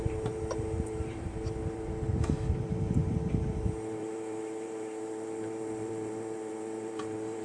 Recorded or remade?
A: remade